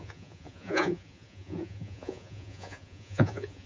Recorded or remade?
remade